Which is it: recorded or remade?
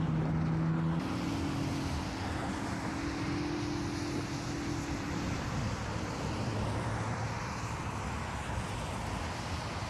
recorded